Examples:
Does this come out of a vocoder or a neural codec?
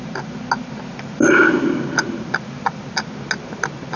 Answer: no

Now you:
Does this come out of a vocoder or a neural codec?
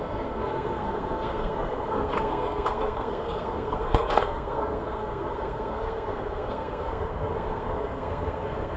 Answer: yes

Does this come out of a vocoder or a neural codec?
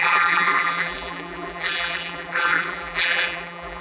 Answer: yes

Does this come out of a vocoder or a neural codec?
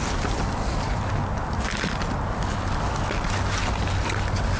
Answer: no